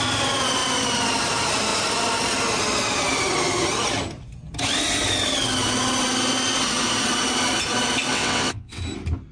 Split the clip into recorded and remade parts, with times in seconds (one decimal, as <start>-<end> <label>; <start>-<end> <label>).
0.0-8.1 recorded; 8.1-8.8 remade; 8.8-9.3 recorded